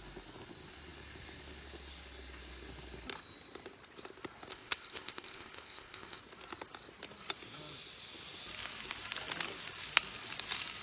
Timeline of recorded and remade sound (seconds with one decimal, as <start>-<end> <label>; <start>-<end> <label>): 0.0-4.5 recorded; 4.5-6.2 remade; 6.2-10.8 recorded